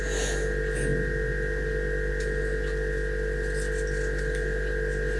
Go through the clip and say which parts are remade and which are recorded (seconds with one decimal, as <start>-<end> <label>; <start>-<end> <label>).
0.0-5.2 recorded